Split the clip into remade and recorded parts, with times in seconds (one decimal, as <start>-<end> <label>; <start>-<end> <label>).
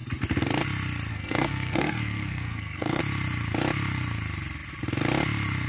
0.0-1.1 recorded; 1.1-3.0 remade; 3.0-5.7 recorded